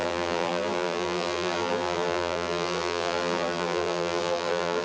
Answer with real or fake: fake